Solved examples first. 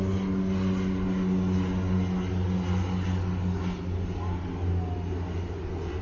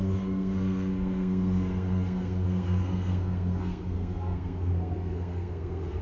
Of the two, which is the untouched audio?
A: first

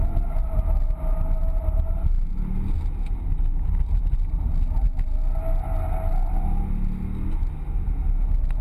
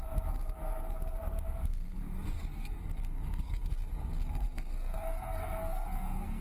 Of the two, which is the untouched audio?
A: first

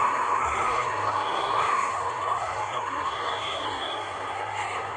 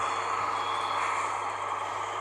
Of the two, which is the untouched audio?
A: second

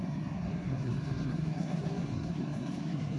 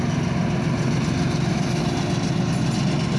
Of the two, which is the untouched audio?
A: second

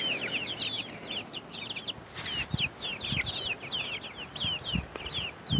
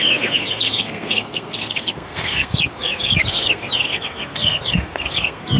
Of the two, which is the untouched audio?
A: first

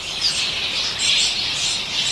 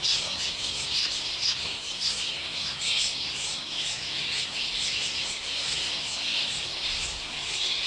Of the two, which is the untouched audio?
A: first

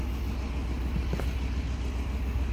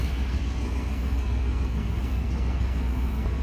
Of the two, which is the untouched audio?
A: first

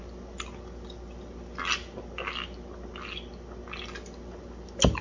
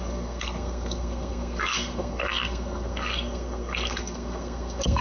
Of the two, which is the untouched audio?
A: first